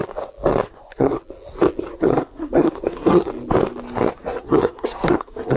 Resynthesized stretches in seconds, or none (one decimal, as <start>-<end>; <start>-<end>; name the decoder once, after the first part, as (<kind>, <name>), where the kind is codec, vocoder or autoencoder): 0.7-1.2 (codec, SNAC); 1.9-3.3; 4.1-5.6